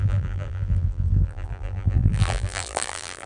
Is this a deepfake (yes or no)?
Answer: yes